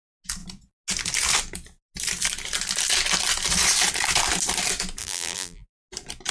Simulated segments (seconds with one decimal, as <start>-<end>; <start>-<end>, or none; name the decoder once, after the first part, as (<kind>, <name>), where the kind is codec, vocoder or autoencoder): 5.0-5.7 (vocoder, BigVGAN v2)

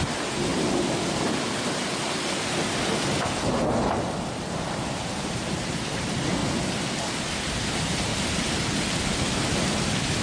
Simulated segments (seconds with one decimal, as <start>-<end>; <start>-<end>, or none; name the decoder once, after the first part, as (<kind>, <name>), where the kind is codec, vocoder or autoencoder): 0.0-0.5 (vocoder, BigVGAN v2); 4.6-6.4; 7.2-8.1; 9.3-10.2

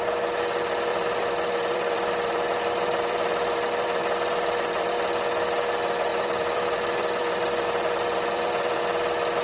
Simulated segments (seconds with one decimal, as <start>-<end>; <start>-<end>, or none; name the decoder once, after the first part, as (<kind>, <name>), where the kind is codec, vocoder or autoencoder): 0.9-4.9 (vocoder, BigVGAN v2); 6.1-8.8

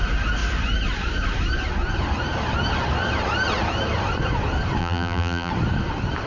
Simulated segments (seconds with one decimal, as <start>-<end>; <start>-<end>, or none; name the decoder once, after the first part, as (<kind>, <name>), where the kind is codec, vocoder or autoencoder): 4.8-5.5 (vocoder, BigVGAN v2)

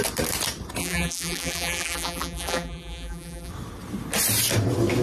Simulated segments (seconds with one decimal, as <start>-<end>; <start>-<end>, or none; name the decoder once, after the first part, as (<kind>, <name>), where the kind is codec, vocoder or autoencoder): 0.8-3.5 (vocoder, BigVGAN v2)